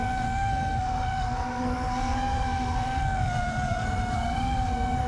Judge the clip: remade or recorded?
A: remade